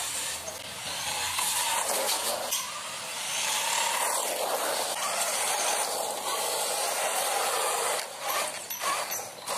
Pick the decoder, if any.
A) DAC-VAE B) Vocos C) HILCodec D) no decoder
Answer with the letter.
D